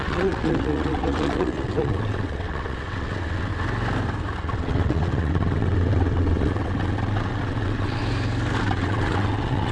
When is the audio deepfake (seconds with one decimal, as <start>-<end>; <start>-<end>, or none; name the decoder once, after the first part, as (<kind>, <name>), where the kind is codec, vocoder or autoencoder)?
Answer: 0.0-3.5 (vocoder, WaveNeXt); 4.4-8.0; 8.6-9.7